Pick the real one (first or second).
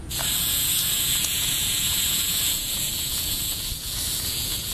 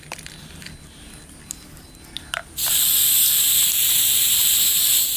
second